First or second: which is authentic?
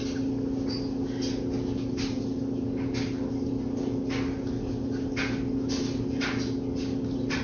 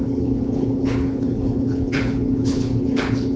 first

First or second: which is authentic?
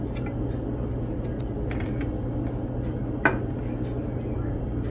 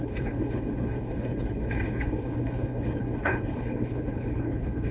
first